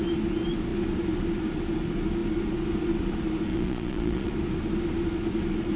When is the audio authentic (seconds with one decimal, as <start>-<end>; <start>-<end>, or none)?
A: 0.0-3.5; 4.3-5.8